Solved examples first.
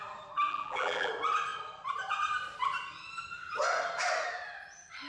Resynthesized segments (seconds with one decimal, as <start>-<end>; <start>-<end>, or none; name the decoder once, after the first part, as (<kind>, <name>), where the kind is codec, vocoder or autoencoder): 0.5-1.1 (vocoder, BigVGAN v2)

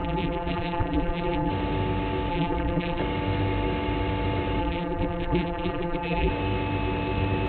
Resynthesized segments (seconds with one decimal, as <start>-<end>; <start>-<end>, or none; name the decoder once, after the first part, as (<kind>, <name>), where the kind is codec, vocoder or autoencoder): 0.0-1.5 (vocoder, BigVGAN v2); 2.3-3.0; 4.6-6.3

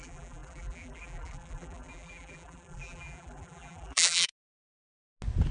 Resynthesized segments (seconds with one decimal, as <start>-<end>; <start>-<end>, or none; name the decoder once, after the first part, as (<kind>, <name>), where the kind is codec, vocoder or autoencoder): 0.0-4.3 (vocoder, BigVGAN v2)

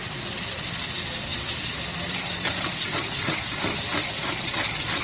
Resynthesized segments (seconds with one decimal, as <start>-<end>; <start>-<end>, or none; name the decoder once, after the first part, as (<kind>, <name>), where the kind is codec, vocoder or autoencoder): 1.3-4.3 (vocoder, BigVGAN v2)